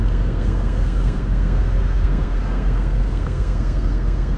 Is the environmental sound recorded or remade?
remade